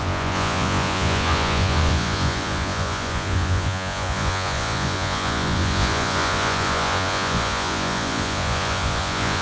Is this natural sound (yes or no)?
no